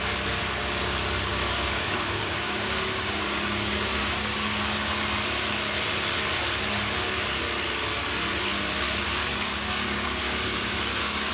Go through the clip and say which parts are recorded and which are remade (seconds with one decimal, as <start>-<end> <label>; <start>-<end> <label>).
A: 0.0-1.3 recorded; 1.3-4.6 remade; 4.6-9.2 recorded; 9.2-11.3 remade